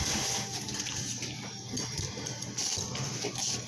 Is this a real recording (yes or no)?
yes